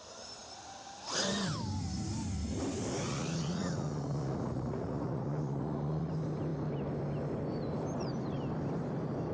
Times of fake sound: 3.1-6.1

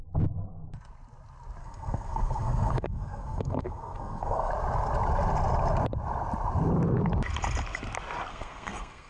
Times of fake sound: 1.6-4.5; 8.3-9.1

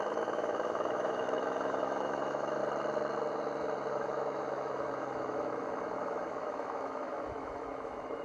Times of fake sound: 0.0-2.6; 3.9-8.2